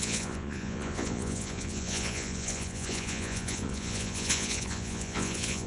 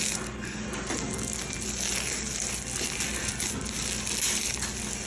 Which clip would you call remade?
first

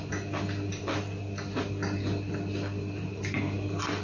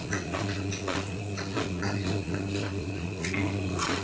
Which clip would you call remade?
second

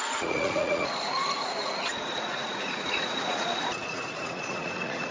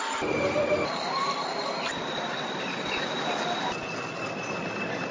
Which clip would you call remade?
first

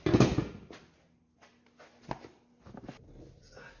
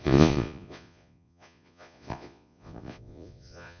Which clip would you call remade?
second